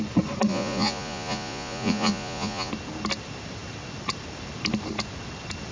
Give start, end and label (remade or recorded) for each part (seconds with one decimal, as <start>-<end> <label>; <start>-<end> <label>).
0.0-0.5 recorded; 0.5-2.7 remade; 2.7-5.7 recorded